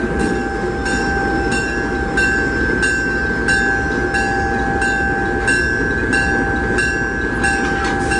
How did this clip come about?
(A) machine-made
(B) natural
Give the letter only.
B